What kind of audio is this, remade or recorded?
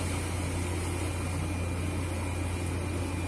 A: recorded